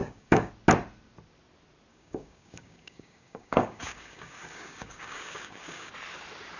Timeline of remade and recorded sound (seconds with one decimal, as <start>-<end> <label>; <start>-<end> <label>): 0.0-0.5 remade; 0.5-1.9 recorded; 1.9-5.9 remade; 5.9-6.6 recorded